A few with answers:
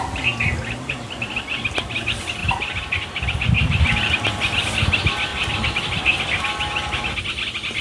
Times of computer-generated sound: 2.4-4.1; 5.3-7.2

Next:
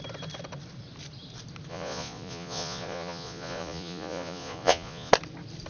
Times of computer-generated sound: 1.7-5.1

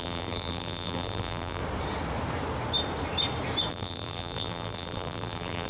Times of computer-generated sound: 0.0-1.6; 3.7-5.7